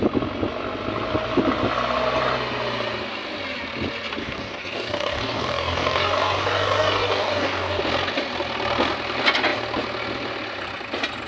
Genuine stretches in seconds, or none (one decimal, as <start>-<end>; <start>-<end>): 0.0-4.2; 7.8-11.3